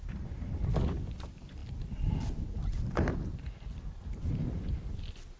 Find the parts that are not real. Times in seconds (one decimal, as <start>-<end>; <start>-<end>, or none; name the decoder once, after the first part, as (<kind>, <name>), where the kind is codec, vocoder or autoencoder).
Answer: none